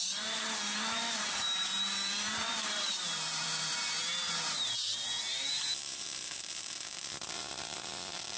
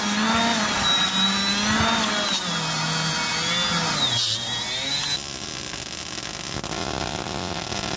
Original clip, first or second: second